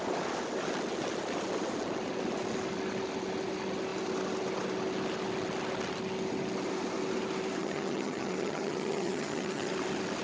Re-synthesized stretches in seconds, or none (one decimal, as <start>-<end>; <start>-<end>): 7.6-9.7